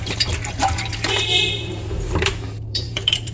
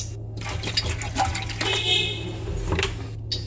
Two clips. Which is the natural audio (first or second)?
second